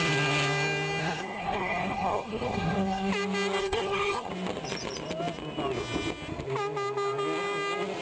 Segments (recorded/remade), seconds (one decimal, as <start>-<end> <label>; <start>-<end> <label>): 0.0-1.0 recorded; 1.0-3.1 remade; 3.1-3.6 recorded; 3.6-4.3 remade; 4.3-8.0 recorded